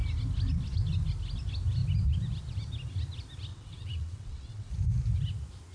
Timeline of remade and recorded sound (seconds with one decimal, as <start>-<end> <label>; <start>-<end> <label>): 0.0-3.5 recorded; 3.5-4.7 remade; 4.7-5.7 recorded